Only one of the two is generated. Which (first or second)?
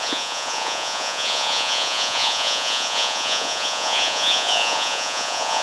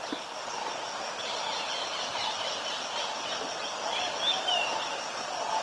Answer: first